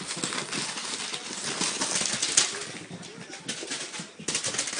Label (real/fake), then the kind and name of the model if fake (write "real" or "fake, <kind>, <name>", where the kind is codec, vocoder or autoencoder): real